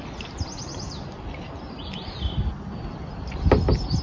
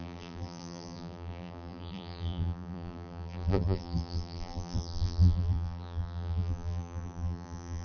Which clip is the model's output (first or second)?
second